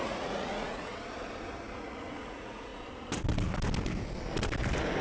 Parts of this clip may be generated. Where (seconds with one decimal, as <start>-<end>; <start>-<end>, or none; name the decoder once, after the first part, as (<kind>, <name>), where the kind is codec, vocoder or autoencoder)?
0.0-0.9 (vocoder, Vocos); 1.8-2.7